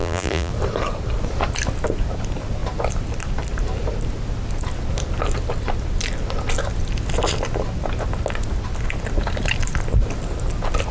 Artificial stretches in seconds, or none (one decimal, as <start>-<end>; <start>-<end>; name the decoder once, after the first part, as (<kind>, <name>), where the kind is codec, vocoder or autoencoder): 0.0-0.5 (vocoder, BigVGAN v2)